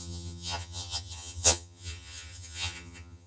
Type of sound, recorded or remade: remade